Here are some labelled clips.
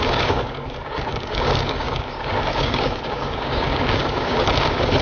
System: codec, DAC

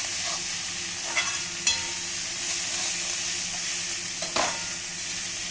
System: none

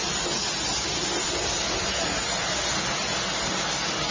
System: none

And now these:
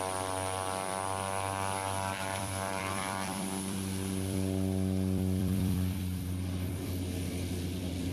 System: vocoder, BigVGAN v2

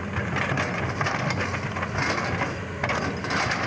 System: none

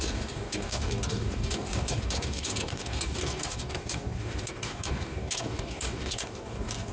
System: codec, DAC